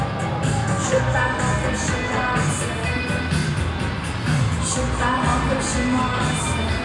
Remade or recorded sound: recorded